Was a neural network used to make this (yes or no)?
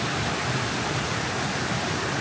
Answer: no